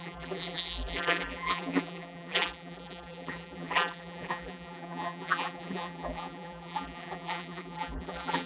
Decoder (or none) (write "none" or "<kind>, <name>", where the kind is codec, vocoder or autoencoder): vocoder, BigVGAN v2